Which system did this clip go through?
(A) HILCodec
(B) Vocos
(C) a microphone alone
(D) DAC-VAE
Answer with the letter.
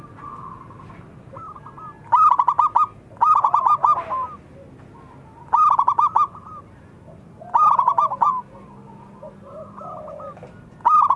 C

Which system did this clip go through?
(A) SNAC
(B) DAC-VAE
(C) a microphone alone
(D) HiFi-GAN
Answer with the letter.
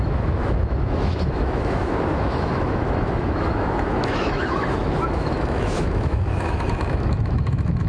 B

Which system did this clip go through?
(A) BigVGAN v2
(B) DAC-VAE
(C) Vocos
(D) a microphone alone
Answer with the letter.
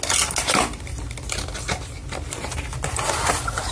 D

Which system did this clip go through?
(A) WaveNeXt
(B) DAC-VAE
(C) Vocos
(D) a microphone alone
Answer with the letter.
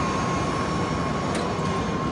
D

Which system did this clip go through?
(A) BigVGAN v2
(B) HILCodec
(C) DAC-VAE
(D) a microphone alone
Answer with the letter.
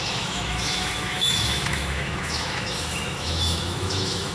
C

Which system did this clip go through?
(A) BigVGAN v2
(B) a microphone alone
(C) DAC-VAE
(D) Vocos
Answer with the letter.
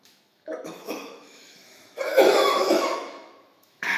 C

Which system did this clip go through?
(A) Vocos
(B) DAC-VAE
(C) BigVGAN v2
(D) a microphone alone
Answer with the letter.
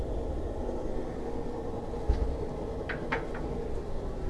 D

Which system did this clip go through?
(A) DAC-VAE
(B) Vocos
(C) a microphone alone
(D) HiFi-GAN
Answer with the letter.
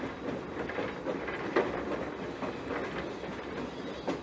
C